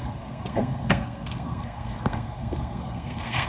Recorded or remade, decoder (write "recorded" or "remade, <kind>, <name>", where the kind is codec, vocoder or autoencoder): remade, codec, SNAC